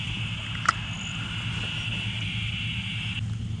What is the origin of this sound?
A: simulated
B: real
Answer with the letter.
B